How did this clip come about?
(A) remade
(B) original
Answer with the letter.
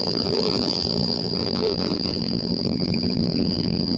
A